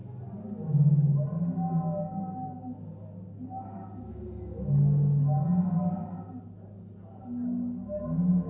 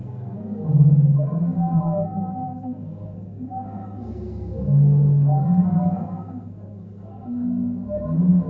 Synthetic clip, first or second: second